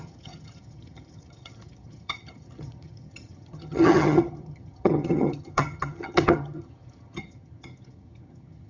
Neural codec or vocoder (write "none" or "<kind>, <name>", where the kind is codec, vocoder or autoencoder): vocoder, HiFi-GAN